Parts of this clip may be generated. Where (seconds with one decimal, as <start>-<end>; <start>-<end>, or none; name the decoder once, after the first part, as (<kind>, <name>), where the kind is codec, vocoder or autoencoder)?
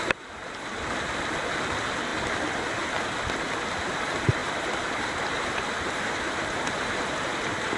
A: 4.4-7.8 (vocoder, BigVGAN v2)